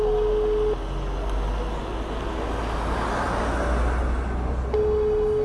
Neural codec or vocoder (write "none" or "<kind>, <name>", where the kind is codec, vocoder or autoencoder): none